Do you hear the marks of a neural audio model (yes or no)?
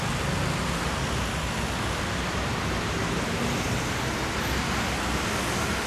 no